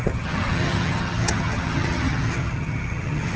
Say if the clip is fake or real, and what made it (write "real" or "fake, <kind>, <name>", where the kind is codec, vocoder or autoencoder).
fake, vocoder, HiFi-GAN